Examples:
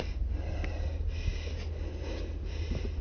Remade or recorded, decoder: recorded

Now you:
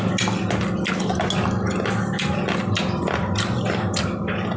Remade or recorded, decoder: recorded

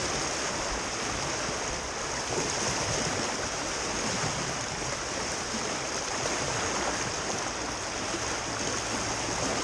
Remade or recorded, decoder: recorded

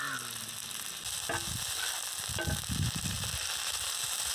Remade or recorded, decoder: recorded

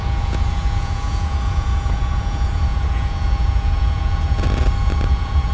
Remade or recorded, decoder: remade, vocoder, Vocos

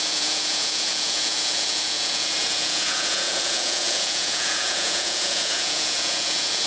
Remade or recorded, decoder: remade, vocoder, Vocos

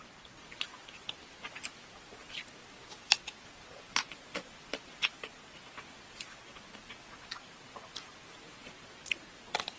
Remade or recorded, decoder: recorded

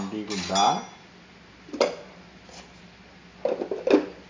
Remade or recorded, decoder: recorded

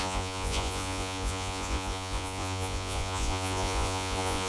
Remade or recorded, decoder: remade, vocoder, Vocos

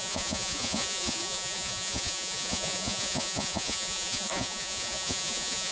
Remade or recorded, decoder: remade, vocoder, Vocos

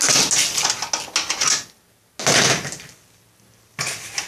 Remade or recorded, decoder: recorded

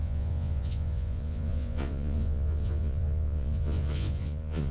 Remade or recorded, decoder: remade, vocoder, Vocos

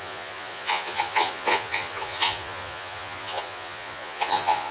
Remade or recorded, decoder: remade, vocoder, Vocos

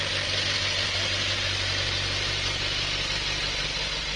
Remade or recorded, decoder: recorded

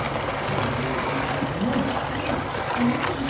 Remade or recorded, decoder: recorded